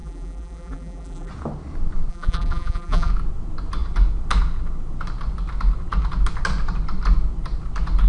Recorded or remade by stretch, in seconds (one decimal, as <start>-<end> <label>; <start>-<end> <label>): 0.0-1.3 remade; 1.3-2.1 recorded; 2.1-3.1 remade; 3.1-8.1 recorded